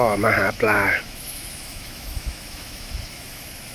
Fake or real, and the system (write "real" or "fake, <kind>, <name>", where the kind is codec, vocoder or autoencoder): fake, autoencoder, DAC-VAE